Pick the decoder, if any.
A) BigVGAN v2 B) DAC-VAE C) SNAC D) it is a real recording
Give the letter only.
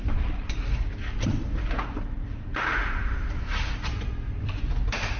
A